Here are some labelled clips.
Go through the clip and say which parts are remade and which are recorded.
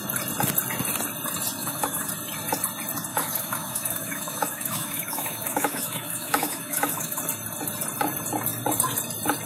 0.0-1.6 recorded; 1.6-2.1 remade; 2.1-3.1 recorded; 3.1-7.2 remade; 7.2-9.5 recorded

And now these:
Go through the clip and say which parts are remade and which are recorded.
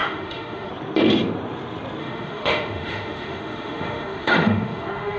0.0-0.7 remade; 0.7-2.0 recorded; 2.0-5.2 remade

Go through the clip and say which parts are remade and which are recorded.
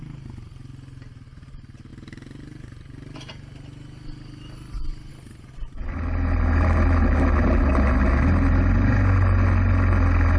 0.0-10.4 recorded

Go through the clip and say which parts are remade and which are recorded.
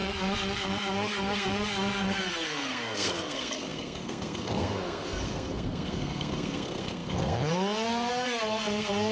0.0-9.1 remade